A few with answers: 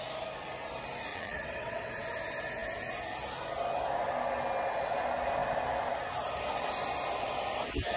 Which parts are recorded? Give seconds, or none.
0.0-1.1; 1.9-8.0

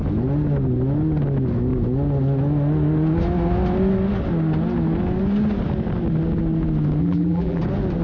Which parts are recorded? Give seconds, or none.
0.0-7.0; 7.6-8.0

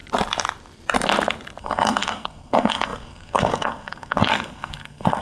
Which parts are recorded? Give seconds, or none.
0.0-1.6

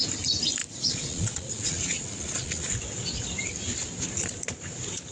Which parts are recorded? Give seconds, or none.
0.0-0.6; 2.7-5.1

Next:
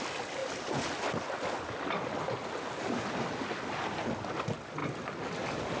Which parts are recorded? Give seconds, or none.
0.0-5.8